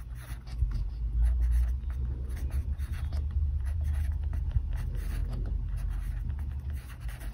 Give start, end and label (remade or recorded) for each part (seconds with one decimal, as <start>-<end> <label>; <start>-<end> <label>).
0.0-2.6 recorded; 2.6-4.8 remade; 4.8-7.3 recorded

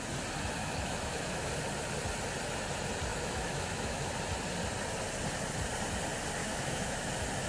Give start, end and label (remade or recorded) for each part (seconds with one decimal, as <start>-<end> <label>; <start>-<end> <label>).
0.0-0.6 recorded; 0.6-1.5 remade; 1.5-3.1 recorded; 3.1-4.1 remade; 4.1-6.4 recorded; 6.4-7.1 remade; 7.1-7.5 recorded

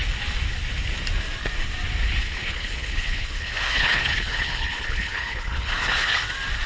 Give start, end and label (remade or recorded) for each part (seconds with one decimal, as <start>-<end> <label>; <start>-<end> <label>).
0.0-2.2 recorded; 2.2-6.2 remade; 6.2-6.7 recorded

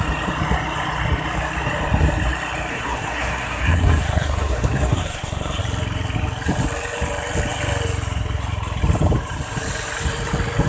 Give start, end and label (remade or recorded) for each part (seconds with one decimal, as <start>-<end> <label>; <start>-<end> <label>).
0.0-2.7 recorded; 2.7-5.6 remade; 5.6-10.7 recorded

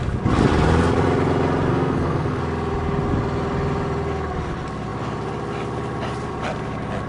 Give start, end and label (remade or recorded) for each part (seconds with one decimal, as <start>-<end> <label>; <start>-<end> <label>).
0.0-1.7 recorded; 1.7-2.4 remade; 2.4-7.1 recorded

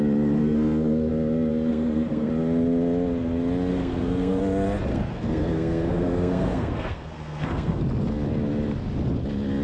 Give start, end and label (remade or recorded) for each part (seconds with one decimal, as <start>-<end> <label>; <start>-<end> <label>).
0.0-0.4 recorded; 0.4-1.1 remade; 1.1-1.5 recorded; 1.5-2.3 remade; 2.3-3.7 recorded; 3.7-4.4 remade; 4.4-4.9 recorded; 4.9-7.8 remade; 7.8-9.6 recorded

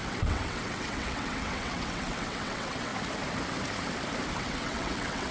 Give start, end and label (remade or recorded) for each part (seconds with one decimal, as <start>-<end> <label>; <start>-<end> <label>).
0.0-2.9 remade; 2.9-4.4 recorded; 4.4-5.3 remade